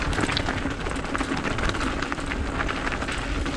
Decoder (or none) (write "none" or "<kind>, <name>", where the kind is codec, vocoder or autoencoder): none